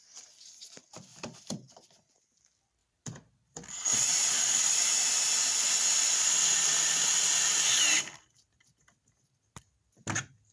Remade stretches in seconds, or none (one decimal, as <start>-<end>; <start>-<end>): 1.1-2.0; 2.8-4.9